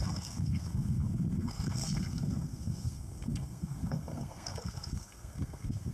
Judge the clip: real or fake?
fake